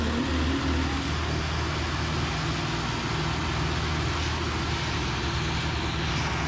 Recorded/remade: recorded